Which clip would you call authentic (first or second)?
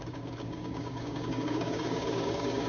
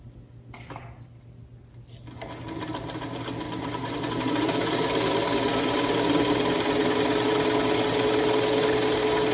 second